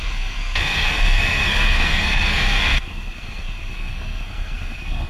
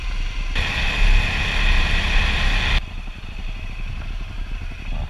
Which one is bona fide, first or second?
second